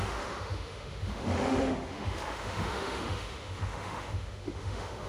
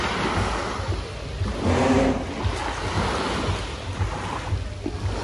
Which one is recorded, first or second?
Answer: second